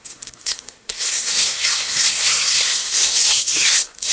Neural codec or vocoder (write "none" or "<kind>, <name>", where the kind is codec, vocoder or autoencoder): codec, SNAC